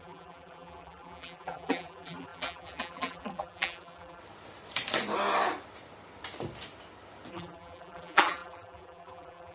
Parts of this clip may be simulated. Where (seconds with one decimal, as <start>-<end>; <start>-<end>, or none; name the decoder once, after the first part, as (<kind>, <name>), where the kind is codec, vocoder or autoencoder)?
0.0-4.2 (vocoder, BigVGAN v2); 7.3-9.5